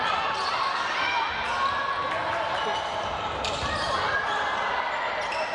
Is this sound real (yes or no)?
yes